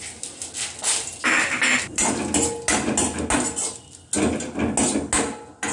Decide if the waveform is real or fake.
real